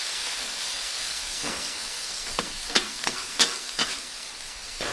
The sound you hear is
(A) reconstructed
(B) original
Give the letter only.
A